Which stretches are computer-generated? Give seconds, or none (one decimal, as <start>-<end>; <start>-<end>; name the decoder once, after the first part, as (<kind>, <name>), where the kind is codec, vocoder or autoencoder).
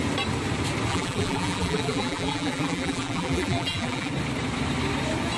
0.9-4.1 (vocoder, BigVGAN v2)